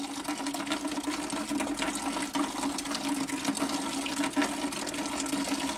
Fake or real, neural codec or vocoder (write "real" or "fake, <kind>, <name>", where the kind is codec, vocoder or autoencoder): real